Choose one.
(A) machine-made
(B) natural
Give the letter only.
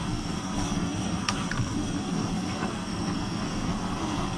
A